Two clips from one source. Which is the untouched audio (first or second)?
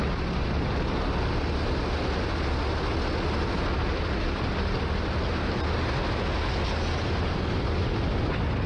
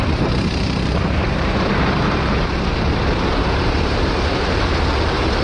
first